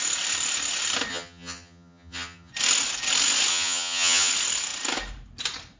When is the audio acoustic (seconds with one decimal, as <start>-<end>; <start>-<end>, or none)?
0.0-1.1; 2.5-3.5; 4.3-5.8